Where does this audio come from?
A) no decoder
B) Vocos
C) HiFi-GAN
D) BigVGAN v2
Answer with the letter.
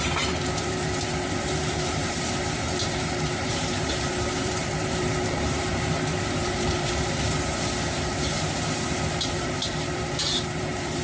D